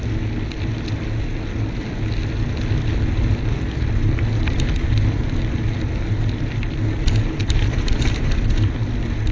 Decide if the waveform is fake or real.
real